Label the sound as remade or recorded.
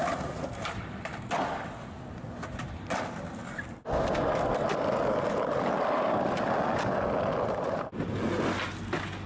recorded